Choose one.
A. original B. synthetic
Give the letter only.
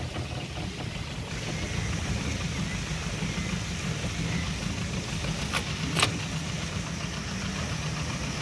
A